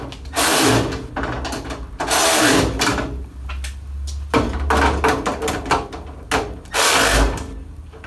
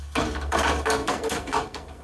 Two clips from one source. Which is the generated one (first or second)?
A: second